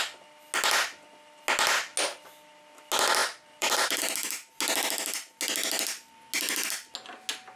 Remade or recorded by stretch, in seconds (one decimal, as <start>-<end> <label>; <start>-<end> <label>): 0.0-3.2 recorded; 3.2-4.0 remade; 4.0-7.6 recorded